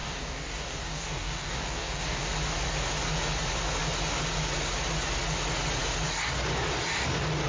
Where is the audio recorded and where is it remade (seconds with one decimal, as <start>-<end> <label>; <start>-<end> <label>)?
0.0-2.3 remade; 2.3-7.5 recorded